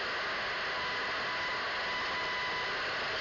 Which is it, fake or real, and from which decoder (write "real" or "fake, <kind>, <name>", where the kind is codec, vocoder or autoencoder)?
real